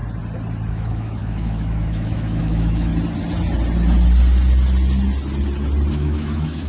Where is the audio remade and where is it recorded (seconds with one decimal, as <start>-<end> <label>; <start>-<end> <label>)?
0.0-0.7 recorded; 0.7-2.9 remade; 2.9-5.9 recorded; 5.9-6.7 remade